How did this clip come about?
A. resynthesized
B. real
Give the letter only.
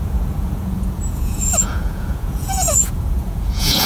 A